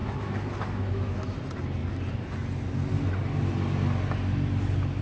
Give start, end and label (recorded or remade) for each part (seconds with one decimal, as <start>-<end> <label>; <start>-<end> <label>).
0.0-1.4 remade; 1.4-5.0 recorded